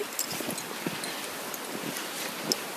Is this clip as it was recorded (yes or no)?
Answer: yes